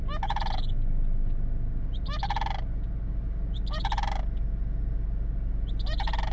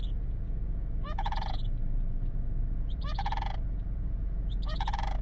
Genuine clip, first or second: first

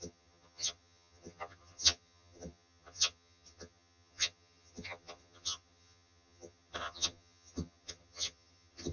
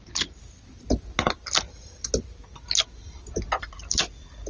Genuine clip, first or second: second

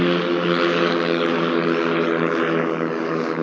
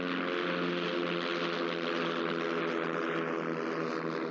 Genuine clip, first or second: second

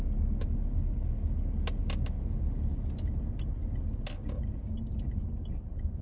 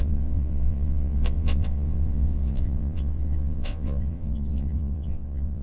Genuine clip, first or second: first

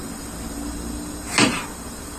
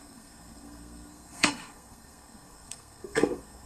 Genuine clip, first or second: first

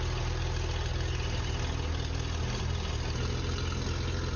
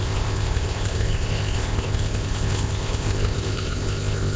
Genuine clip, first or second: first